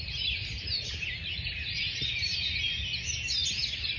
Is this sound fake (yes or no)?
no